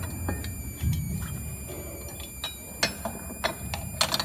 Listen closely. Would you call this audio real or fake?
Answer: real